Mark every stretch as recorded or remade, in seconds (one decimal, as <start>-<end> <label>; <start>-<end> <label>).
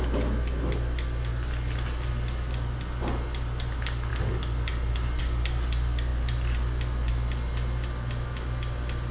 0.0-9.1 recorded